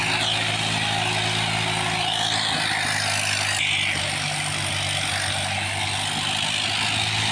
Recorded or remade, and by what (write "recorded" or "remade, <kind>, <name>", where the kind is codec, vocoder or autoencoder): recorded